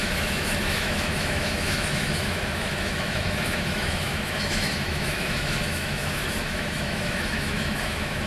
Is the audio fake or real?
fake